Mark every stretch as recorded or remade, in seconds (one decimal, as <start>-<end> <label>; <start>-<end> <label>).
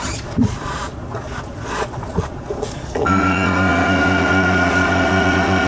0.0-5.7 remade